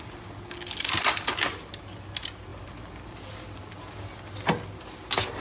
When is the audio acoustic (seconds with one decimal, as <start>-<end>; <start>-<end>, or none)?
0.0-5.4

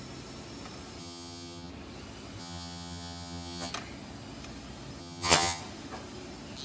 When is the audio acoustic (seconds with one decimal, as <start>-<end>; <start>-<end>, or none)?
0.0-1.0; 1.7-2.4; 3.7-5.0; 5.6-6.6

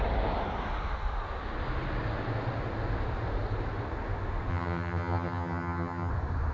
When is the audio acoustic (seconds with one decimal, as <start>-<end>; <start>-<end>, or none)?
0.0-4.5; 6.1-6.5

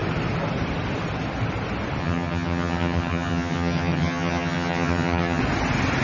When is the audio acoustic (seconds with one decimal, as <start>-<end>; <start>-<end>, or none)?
0.0-2.0; 5.4-6.0

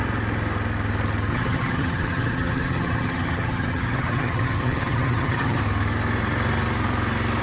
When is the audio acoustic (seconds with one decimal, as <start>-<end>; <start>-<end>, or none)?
0.0-1.3; 5.6-7.4

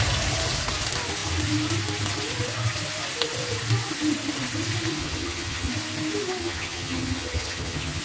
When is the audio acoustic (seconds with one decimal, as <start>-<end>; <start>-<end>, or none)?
0.0-5.0; 5.7-6.4